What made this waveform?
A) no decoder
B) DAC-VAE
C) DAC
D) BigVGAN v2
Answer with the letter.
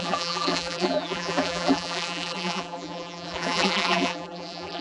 D